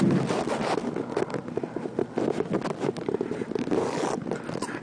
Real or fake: real